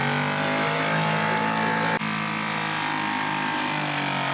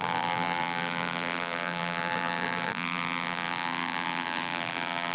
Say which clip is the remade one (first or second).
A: second